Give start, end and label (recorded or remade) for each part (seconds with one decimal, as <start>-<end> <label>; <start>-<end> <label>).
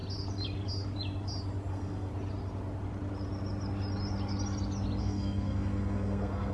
0.0-1.7 recorded; 1.7-2.1 remade; 2.1-5.0 recorded; 5.0-6.5 remade